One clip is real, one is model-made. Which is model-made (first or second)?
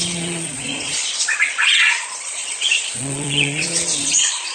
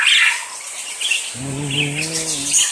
first